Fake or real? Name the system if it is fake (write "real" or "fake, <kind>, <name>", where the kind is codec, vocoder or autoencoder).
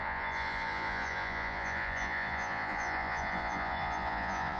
fake, vocoder, Vocos